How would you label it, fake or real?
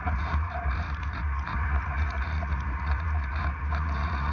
fake